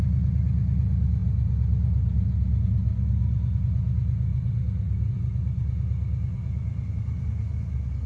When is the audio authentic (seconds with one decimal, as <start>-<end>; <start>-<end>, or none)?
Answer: 0.0-8.1